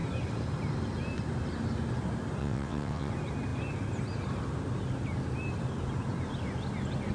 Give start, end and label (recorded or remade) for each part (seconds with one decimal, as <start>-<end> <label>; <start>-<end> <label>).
0.0-2.4 recorded; 2.4-3.1 remade; 3.1-7.1 recorded